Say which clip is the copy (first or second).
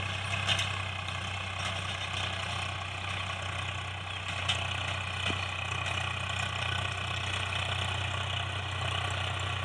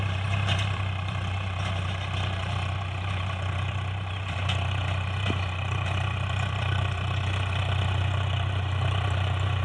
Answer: second